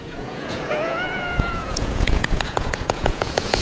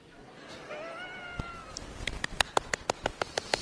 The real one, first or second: second